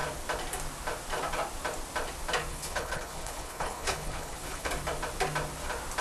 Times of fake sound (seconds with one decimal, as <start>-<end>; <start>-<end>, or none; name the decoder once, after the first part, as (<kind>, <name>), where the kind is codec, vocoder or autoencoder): 2.5-4.7 (codec, HILCodec)